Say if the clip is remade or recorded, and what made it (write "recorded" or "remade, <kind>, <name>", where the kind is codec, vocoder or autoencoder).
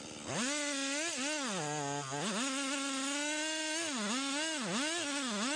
recorded